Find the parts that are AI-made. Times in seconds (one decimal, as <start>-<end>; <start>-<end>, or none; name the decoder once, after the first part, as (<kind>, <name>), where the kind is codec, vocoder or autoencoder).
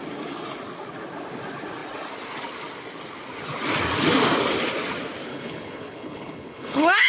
5.3-7.1 (codec, HILCodec)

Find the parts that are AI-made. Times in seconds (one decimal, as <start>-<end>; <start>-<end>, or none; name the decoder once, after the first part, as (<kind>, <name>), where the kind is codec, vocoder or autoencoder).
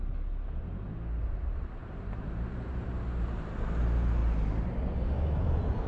1.8-3.8 (vocoder, BigVGAN v2)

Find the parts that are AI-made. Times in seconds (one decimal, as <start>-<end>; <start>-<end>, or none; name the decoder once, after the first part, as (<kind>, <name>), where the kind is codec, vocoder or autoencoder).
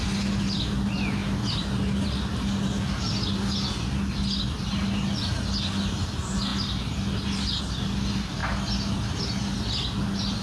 none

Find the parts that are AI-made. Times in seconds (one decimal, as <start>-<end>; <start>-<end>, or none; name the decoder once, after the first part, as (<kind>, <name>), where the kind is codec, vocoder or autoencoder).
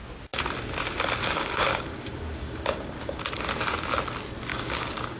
1.2-3.2 (codec, DAC); 4.5-5.2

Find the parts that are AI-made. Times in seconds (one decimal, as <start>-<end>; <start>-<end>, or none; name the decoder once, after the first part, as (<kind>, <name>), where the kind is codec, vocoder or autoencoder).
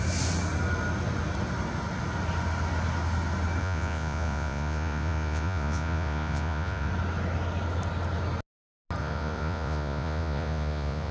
3.6-6.9 (vocoder, Vocos); 9.0-11.1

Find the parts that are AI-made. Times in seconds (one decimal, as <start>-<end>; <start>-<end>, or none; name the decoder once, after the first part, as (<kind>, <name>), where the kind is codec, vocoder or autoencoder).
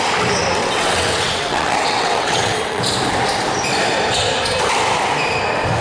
0.6-2.8 (vocoder, WaveNeXt)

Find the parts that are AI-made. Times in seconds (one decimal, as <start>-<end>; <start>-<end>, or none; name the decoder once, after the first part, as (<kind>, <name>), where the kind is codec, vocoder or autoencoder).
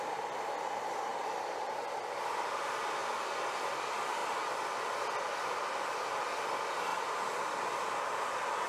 1.1-1.7 (vocoder, BigVGAN v2)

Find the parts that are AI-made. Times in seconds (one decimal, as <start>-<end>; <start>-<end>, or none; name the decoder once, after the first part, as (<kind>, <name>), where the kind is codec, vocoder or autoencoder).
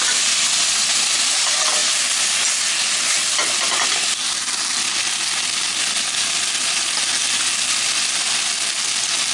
none